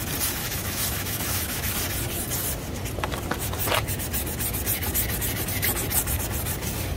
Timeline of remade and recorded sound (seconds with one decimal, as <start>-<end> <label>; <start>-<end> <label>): 0.0-0.4 recorded; 0.4-1.7 remade; 1.7-7.0 recorded